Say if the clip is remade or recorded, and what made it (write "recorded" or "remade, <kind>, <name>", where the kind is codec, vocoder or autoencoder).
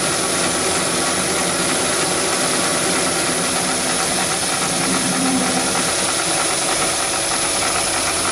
recorded